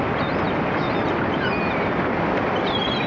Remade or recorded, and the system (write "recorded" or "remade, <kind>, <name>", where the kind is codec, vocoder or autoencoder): recorded